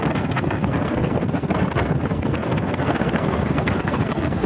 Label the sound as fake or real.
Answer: fake